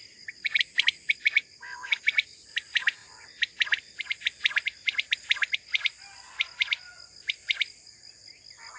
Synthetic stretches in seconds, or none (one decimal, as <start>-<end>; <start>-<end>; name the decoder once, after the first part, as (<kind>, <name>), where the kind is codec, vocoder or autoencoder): none